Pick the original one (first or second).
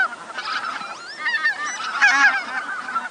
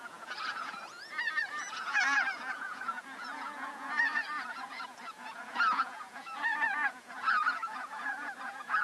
first